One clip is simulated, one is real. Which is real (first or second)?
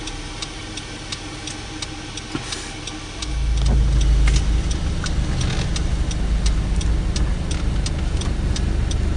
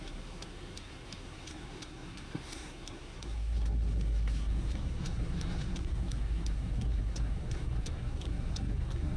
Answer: first